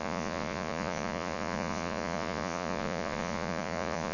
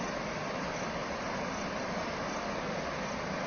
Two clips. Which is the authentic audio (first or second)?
second